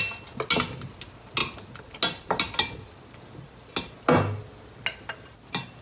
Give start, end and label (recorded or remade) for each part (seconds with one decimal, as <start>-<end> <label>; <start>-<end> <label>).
0.0-5.8 recorded